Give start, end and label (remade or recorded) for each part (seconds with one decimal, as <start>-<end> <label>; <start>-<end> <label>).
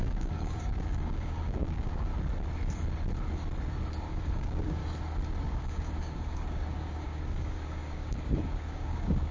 0.0-2.1 remade; 2.1-4.1 recorded; 4.1-4.8 remade; 4.8-5.4 recorded; 5.4-9.3 remade